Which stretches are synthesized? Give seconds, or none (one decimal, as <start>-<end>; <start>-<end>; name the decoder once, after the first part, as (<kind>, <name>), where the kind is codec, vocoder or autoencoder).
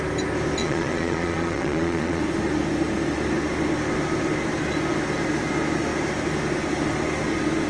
0.6-2.2 (vocoder, Vocos)